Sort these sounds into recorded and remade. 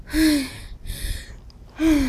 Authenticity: recorded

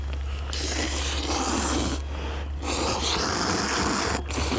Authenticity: recorded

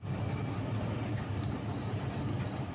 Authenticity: recorded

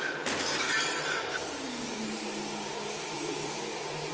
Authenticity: recorded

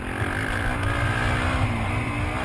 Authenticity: recorded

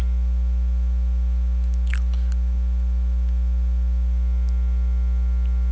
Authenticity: recorded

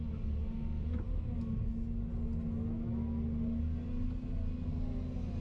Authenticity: recorded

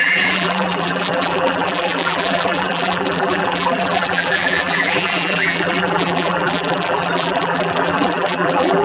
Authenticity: remade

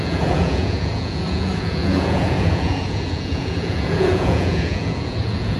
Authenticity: remade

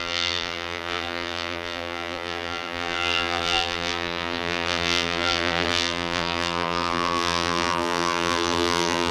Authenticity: remade